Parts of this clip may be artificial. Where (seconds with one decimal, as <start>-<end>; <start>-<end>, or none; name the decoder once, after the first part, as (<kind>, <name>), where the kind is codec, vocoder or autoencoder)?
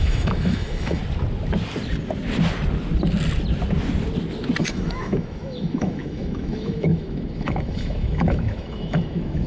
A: 0.0-1.0 (autoencoder, DAC-VAE); 4.6-9.5